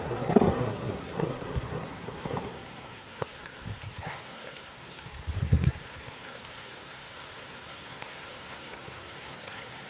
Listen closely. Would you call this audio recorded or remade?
remade